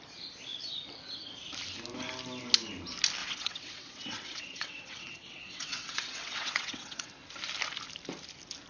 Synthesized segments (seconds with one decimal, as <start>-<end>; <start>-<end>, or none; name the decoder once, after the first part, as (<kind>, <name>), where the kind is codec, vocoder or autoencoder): 3.2-7.1 (vocoder, WaveNeXt)